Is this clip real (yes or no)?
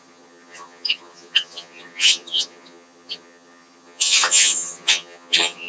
no